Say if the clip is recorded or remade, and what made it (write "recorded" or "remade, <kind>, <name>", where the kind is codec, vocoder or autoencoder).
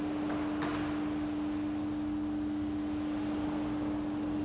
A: recorded